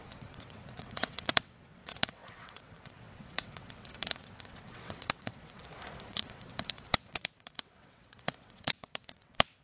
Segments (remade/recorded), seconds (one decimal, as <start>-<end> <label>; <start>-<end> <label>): 0.0-5.6 remade; 5.6-6.1 recorded; 6.1-9.6 remade